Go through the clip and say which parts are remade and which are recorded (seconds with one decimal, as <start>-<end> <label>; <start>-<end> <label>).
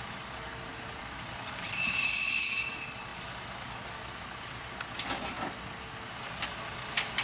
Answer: 0.0-0.7 recorded; 0.7-2.1 remade; 2.1-3.1 recorded; 3.1-4.7 remade; 4.7-7.2 recorded